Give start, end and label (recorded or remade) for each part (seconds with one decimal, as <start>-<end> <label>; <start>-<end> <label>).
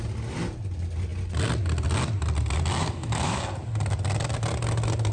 0.0-2.8 recorded; 2.8-3.4 remade; 3.4-5.1 recorded